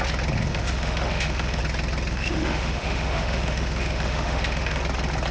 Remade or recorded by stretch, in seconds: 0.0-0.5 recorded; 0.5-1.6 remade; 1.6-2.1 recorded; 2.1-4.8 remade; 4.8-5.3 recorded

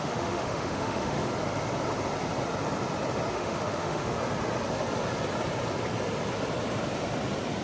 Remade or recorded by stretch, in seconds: 0.0-1.3 remade; 1.3-3.3 recorded; 3.3-4.2 remade; 4.2-7.6 recorded

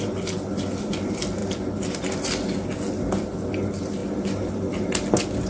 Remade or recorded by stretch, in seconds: 0.0-5.5 recorded

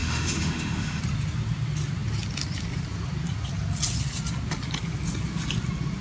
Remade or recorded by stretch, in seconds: 0.0-1.0 remade; 1.0-6.0 recorded

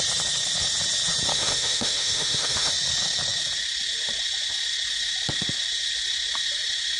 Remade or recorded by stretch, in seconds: 0.0-1.3 recorded; 1.3-2.7 remade; 2.7-7.0 recorded

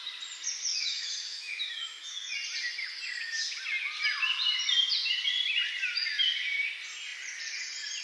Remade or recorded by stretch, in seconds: 0.0-0.7 recorded; 0.7-2.3 remade; 2.3-8.0 recorded